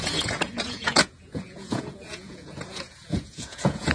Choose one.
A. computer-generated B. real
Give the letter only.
A